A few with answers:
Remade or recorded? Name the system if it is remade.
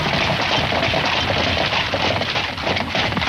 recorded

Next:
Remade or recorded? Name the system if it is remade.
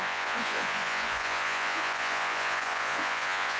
remade, vocoder, Vocos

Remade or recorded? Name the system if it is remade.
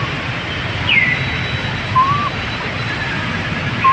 recorded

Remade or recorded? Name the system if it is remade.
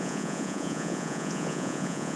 remade, vocoder, Vocos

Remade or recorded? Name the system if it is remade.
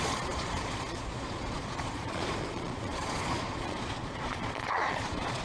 remade, vocoder, Vocos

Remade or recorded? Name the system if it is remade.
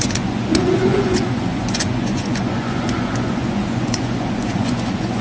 remade, vocoder, Vocos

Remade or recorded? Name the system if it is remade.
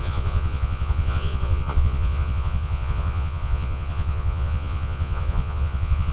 remade, vocoder, Vocos